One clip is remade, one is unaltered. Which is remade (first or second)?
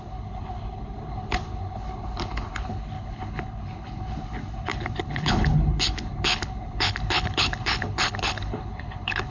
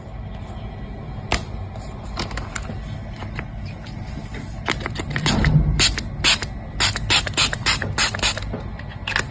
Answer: first